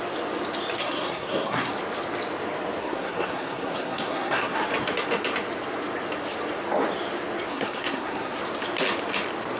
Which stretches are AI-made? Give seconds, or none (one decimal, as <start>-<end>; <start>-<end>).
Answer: 0.8-1.7; 2.8-4.6; 7.5-8.4